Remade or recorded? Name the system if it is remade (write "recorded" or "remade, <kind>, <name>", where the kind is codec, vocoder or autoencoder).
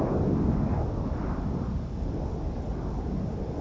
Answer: recorded